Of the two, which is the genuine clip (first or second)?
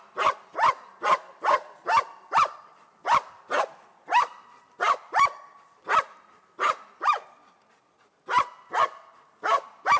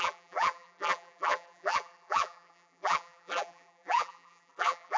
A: first